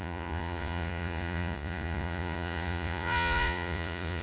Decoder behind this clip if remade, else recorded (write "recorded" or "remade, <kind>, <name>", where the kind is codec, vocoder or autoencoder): remade, vocoder, Vocos